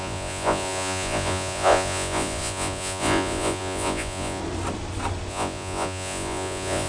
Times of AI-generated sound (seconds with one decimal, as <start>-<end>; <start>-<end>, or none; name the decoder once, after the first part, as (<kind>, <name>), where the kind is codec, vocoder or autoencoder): 0.0-4.4 (vocoder, Vocos); 5.3-6.9